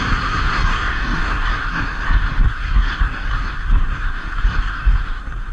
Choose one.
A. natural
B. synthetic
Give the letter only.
B